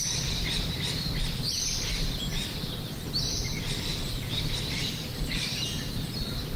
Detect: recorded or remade remade